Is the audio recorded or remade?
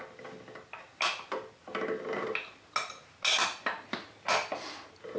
recorded